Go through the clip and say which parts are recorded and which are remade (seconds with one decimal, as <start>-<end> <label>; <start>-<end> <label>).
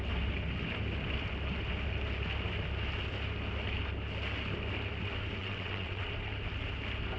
0.0-5.4 recorded; 5.4-6.1 remade; 6.1-7.2 recorded